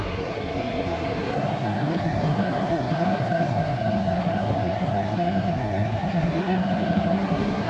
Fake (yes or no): yes